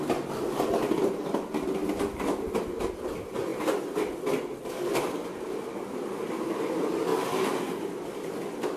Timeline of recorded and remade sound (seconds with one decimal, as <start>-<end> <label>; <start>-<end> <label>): 0.0-8.8 recorded